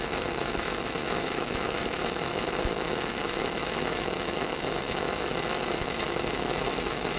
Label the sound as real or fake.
fake